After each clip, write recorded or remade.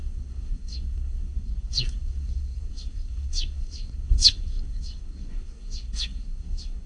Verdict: remade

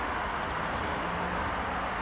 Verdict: recorded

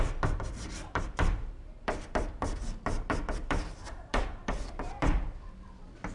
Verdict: remade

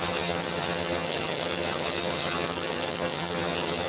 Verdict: remade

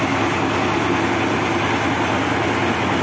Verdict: recorded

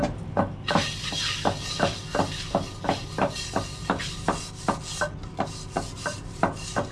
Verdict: recorded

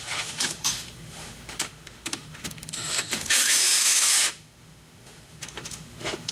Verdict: remade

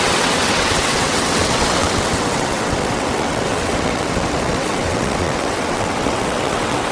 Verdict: remade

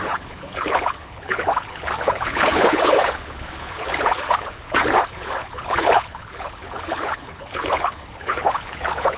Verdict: remade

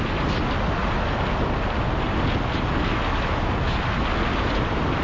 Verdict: recorded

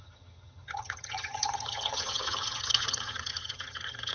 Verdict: remade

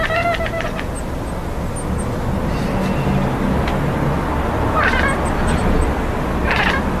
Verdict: recorded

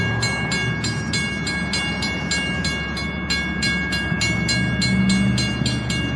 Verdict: recorded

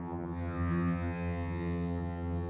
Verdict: remade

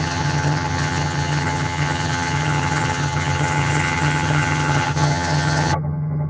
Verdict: remade